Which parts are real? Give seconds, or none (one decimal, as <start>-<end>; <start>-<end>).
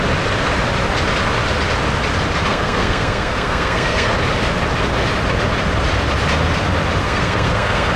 0.0-2.5; 4.1-7.0